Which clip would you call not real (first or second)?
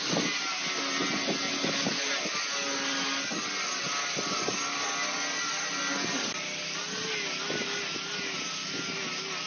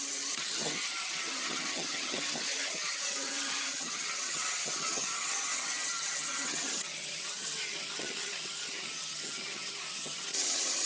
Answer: second